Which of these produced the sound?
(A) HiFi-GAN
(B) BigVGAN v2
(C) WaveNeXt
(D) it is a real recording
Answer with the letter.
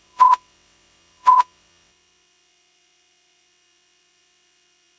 C